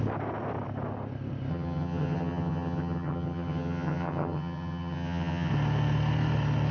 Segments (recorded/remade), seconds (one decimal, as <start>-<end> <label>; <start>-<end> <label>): 0.0-1.5 recorded; 1.5-5.5 remade; 5.5-6.7 recorded